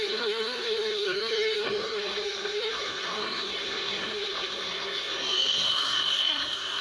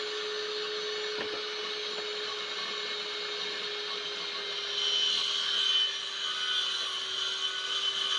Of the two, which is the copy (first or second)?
first